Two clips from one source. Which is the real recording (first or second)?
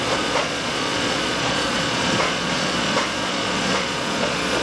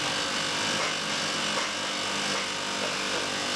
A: second